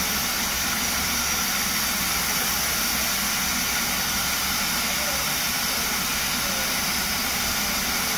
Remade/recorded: recorded